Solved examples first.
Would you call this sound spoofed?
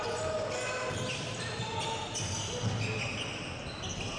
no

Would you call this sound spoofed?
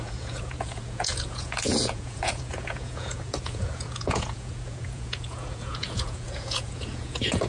yes